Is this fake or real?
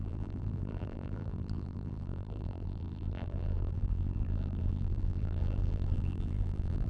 fake